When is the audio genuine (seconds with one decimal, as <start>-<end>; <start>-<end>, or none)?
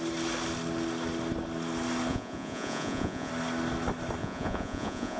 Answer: 0.0-2.1; 3.3-4.2